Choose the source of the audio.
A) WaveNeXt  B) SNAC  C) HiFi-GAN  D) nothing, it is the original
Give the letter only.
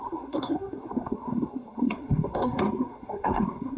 B